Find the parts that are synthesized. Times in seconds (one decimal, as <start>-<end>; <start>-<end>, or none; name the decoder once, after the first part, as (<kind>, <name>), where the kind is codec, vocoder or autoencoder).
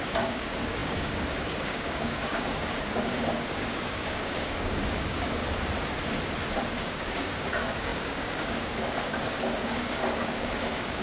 0.0-5.4 (codec, DAC); 6.6-11.0